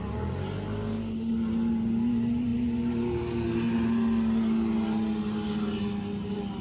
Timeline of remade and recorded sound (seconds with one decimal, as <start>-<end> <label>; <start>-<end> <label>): 0.0-6.6 recorded